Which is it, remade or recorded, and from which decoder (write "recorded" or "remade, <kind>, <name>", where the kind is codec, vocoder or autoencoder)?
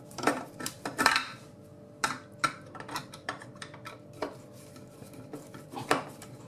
remade, vocoder, BigVGAN v2